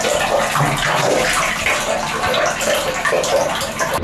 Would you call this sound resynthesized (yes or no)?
no